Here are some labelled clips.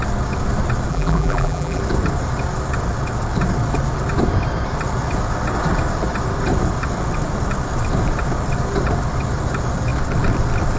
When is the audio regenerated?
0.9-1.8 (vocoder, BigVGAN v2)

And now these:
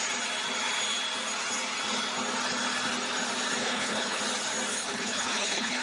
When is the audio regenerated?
3.6-4.2 (codec, HILCodec); 4.7-5.8

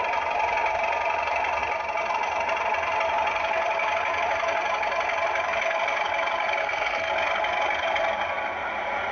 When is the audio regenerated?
6.6-7.1 (codec, SNAC)